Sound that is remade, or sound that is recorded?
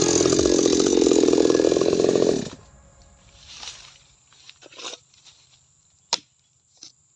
recorded